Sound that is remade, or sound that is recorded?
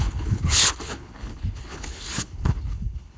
remade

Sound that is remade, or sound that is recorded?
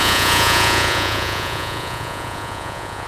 remade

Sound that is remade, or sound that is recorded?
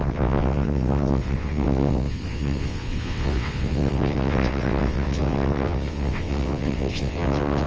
remade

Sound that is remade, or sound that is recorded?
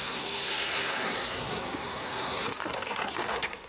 remade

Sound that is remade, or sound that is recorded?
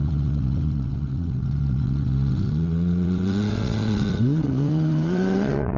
remade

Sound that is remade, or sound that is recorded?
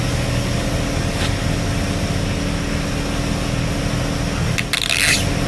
recorded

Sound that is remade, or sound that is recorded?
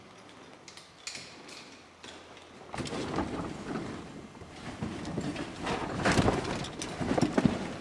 recorded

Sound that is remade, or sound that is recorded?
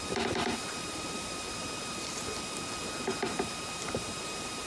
remade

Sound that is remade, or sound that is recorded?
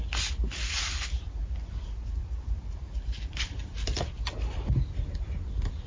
recorded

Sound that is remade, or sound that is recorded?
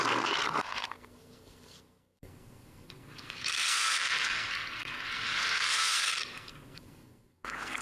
remade